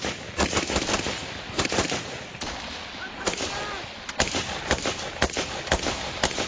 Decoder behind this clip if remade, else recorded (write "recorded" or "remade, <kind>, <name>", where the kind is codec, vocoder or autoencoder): recorded